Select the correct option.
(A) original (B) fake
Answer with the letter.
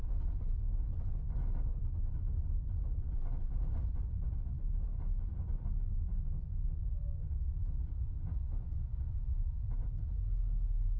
A